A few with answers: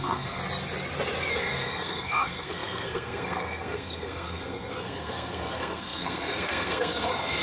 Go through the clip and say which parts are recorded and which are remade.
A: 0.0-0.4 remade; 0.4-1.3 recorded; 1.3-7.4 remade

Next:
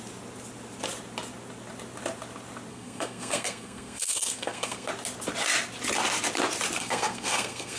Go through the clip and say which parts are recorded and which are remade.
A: 0.0-2.7 recorded; 2.7-4.9 remade; 4.9-6.8 recorded; 6.8-7.8 remade

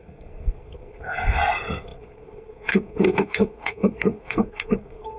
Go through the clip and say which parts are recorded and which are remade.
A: 0.0-5.2 remade

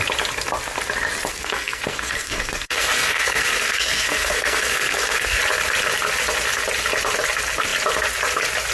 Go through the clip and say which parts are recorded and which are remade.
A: 0.0-1.3 recorded; 1.3-5.4 remade; 5.4-8.7 recorded

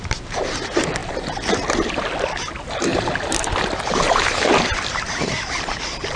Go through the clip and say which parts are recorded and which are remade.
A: 0.0-6.2 recorded